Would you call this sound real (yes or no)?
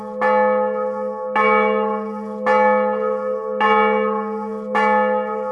yes